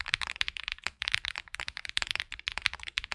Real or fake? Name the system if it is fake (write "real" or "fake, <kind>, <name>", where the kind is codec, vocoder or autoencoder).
fake, vocoder, BigVGAN v2